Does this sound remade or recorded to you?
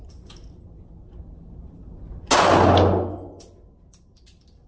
recorded